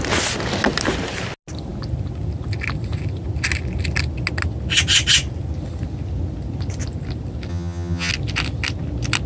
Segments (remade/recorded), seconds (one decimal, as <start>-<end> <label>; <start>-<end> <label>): 0.0-7.5 recorded; 7.5-8.1 remade; 8.1-9.3 recorded